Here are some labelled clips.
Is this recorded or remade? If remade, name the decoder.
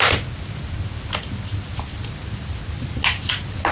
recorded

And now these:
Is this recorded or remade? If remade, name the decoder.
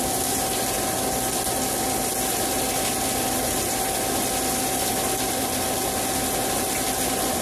recorded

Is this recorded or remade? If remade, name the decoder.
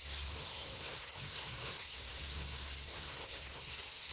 remade, codec, SNAC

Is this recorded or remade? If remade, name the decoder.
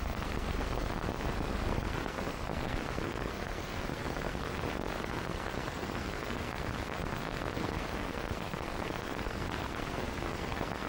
remade, codec, SNAC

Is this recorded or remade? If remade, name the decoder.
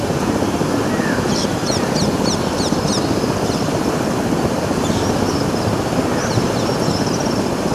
recorded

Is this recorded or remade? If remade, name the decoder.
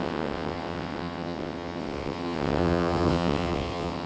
remade, vocoder, WaveNeXt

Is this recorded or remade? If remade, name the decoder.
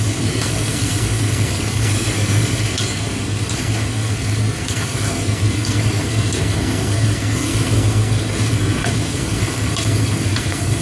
remade, codec, SNAC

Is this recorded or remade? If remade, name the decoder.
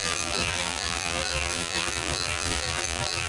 remade, vocoder, BigVGAN v2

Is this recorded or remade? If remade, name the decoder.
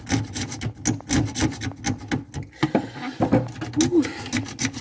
recorded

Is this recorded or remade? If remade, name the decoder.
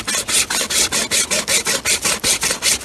recorded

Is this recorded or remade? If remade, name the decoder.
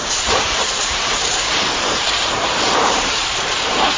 remade, vocoder, BigVGAN v2